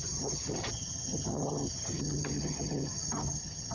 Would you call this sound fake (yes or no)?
yes